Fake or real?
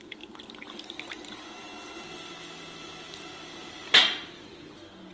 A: real